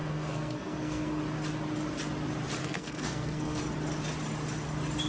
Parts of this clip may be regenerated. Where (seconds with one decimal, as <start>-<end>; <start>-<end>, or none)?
0.0-1.2; 2.6-3.6